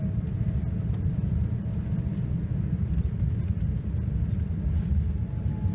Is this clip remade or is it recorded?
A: recorded